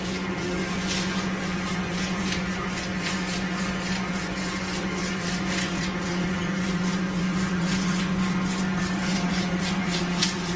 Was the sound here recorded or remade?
remade